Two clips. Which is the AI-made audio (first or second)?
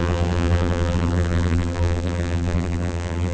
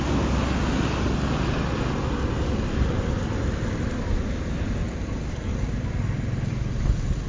first